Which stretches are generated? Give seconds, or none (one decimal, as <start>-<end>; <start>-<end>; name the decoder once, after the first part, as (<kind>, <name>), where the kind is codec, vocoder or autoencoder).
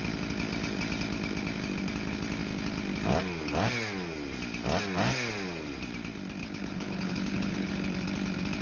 6.4-7.7 (codec, HILCodec)